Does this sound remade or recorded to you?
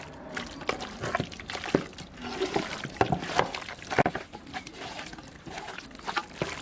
recorded